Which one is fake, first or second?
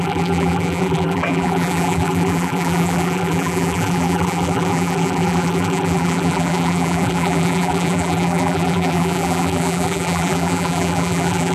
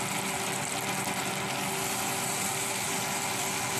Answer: first